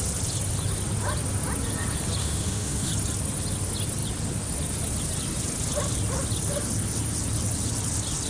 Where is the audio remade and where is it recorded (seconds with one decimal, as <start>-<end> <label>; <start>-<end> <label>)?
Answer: 0.0-2.2 recorded; 2.2-2.9 remade; 2.9-8.3 recorded